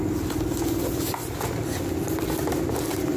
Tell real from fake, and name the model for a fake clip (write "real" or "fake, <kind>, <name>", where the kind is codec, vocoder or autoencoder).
real